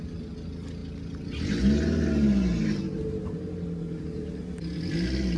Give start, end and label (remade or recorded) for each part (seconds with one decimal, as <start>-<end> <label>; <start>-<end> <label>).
0.0-5.4 recorded